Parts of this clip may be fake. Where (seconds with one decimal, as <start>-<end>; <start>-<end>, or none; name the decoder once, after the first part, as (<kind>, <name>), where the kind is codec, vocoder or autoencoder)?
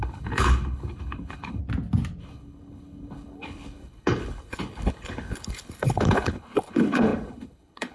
0.0-1.6 (codec, HILCodec); 2.2-7.9